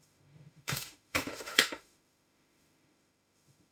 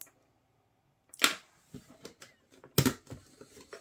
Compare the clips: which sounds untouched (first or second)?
second